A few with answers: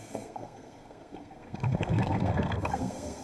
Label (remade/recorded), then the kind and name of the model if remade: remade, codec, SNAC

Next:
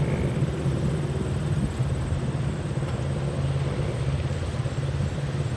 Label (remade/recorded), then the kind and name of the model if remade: recorded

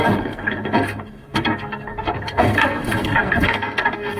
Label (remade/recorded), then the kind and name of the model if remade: remade, codec, SNAC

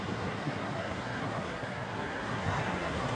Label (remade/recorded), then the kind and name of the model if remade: remade, codec, SNAC